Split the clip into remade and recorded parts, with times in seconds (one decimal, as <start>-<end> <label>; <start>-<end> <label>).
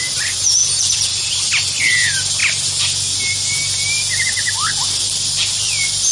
0.0-0.6 recorded; 0.6-1.3 remade; 1.3-6.1 recorded